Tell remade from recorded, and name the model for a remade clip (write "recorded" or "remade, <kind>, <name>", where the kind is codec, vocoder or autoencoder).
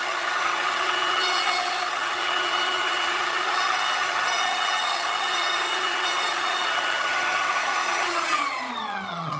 remade, vocoder, HiFi-GAN